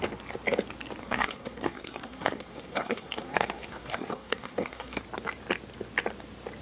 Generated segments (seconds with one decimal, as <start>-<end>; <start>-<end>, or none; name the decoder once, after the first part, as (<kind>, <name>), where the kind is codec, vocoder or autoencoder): 1.0-5.0 (codec, SNAC)